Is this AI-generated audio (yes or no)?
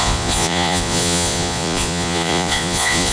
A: yes